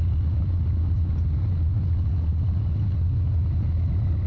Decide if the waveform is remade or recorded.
recorded